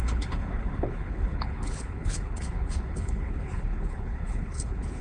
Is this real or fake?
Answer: fake